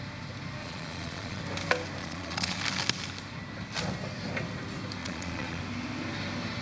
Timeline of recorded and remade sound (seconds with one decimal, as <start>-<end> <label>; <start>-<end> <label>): 0.0-0.6 recorded; 0.6-1.4 remade; 1.4-2.0 recorded; 2.0-2.6 remade; 2.6-5.0 recorded; 5.0-5.6 remade; 5.6-6.6 recorded